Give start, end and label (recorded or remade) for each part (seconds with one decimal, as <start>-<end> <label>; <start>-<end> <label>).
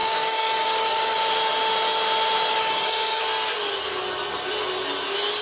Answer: 0.0-1.2 remade; 1.2-2.5 recorded; 2.5-3.2 remade; 3.2-5.4 recorded